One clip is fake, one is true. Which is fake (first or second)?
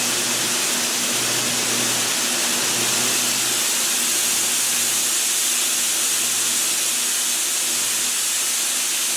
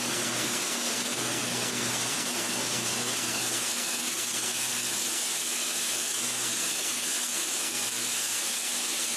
second